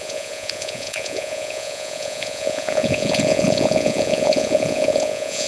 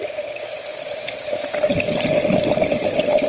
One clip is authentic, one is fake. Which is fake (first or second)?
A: first